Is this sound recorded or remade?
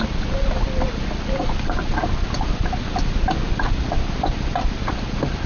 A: remade